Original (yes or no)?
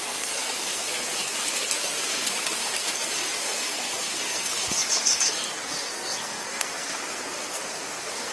no